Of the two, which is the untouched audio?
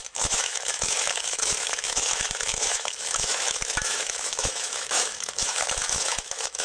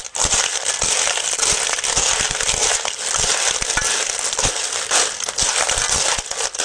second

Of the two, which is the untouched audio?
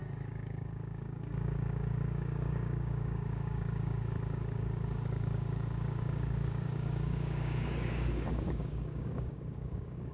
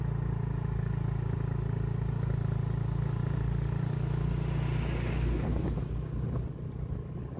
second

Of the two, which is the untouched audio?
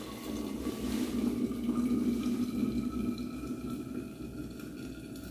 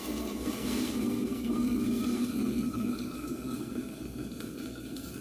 first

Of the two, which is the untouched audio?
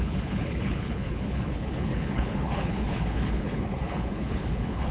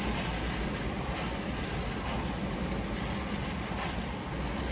second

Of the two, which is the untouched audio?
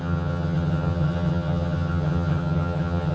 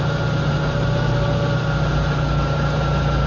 second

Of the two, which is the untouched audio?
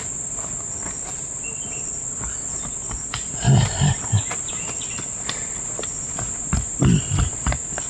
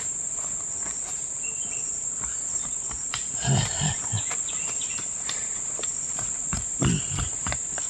first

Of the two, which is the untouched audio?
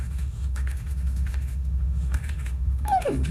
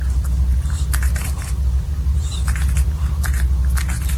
second